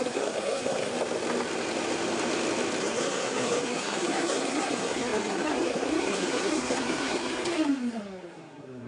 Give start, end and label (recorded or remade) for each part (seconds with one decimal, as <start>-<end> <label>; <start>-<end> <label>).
0.0-0.9 remade; 0.9-2.8 recorded; 2.8-8.9 remade